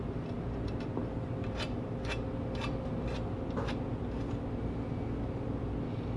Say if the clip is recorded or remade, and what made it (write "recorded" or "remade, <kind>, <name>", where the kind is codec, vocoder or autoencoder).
recorded